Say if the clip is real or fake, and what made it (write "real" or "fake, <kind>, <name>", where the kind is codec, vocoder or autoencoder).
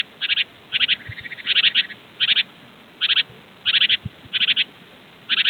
real